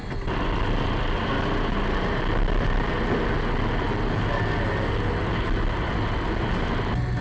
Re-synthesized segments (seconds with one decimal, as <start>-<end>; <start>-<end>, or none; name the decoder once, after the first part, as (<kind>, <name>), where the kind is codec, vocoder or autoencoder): none